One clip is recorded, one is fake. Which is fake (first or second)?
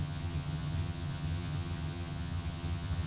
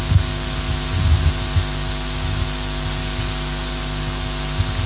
first